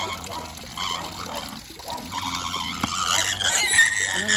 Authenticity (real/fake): real